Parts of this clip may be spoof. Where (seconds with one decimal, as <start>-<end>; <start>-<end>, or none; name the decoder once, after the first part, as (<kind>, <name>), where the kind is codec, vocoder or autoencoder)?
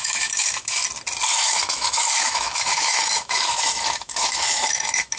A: 0.0-0.8 (autoencoder, DAC-VAE); 1.3-5.2